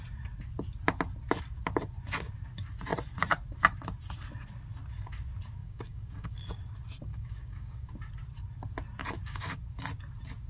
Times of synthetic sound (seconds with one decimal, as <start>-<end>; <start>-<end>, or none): 5.6-6.6; 7.1-7.9; 9.0-9.6